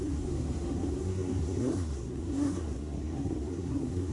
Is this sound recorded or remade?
remade